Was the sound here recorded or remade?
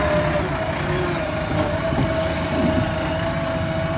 recorded